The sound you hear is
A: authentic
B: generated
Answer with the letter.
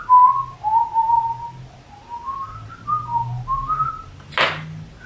A